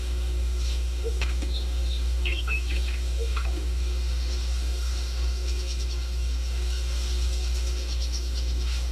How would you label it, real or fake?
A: fake